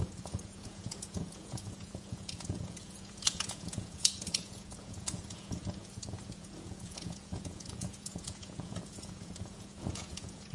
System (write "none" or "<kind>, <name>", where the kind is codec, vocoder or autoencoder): vocoder, Vocos